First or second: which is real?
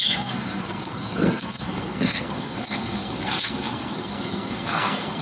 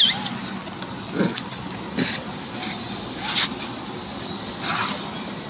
second